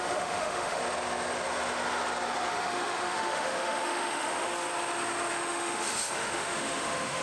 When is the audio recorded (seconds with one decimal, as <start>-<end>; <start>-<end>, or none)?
0.8-2.5; 4.5-5.3